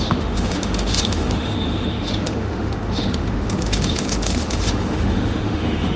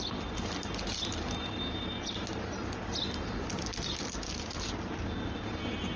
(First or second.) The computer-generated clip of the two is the first